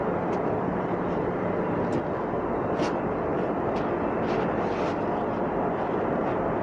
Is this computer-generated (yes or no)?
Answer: no